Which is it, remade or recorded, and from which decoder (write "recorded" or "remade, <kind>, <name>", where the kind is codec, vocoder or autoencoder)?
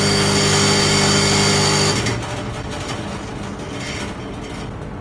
recorded